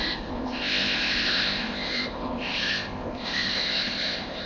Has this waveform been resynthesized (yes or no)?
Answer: yes